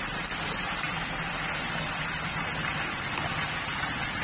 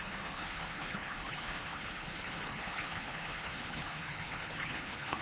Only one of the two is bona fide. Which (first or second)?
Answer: first